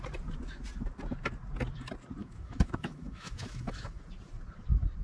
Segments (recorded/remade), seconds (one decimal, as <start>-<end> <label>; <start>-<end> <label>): 0.0-2.2 recorded; 2.2-4.0 remade; 4.0-5.0 recorded